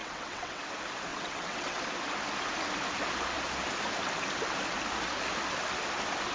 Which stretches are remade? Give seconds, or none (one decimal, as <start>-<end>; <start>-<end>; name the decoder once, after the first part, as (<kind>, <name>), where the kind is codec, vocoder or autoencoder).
0.0-0.6 (vocoder, WaveNeXt); 1.1-1.8